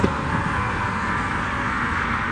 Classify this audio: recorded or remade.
remade